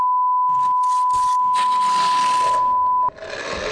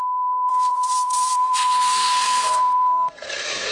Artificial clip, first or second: second